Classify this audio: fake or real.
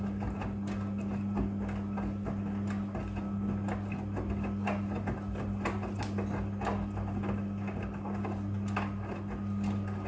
real